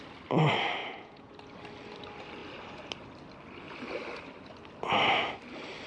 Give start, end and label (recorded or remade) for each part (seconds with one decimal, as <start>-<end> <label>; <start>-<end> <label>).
0.0-0.8 recorded; 0.8-1.3 remade; 1.3-5.9 recorded